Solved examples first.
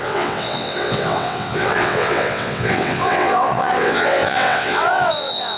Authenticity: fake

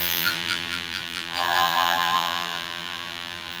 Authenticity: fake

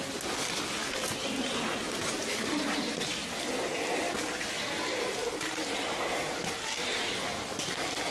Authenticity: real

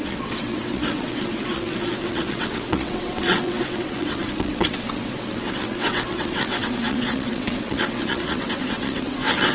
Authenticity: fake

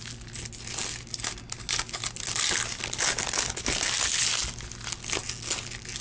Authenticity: real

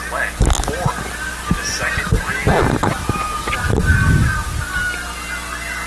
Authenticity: real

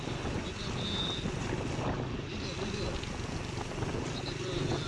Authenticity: real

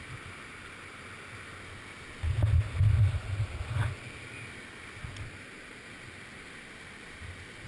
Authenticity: real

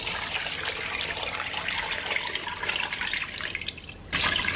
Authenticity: real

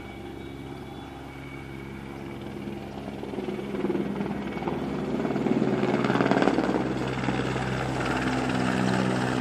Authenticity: real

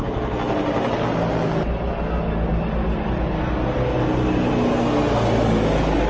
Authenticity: real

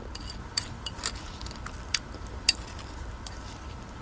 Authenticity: fake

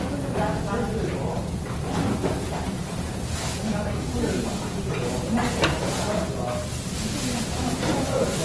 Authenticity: real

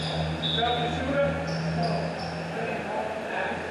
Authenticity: real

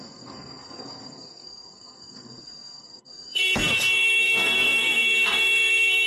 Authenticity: fake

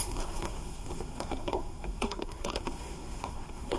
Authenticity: fake